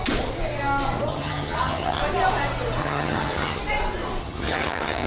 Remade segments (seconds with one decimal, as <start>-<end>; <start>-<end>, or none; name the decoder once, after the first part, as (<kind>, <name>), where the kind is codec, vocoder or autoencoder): 1.1-2.0 (vocoder, HiFi-GAN); 2.8-3.6; 4.2-5.1